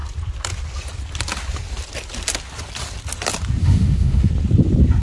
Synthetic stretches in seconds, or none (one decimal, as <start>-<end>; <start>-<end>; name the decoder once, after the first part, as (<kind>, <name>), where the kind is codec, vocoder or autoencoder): 3.6-4.3 (autoencoder, DAC-VAE)